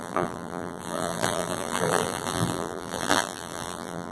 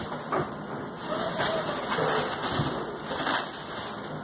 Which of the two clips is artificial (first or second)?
first